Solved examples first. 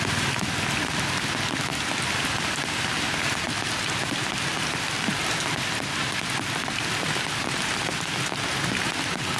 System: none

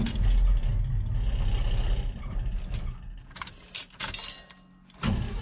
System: none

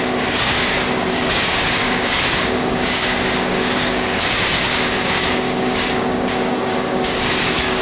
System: codec, DAC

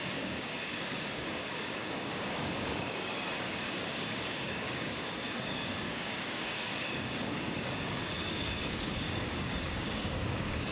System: codec, DAC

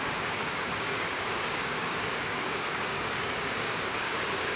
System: codec, DAC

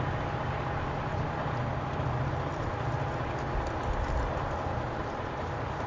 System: none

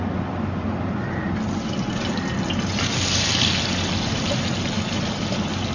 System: none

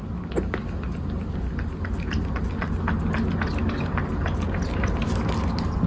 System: none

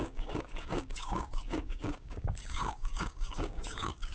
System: codec, DAC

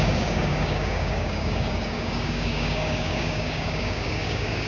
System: codec, DAC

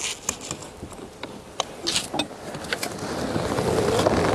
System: none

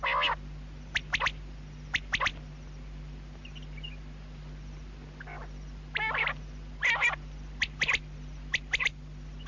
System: none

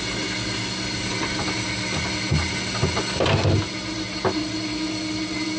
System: none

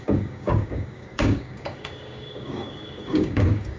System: codec, DAC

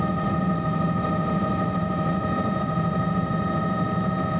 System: none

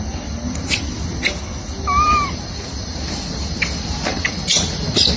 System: none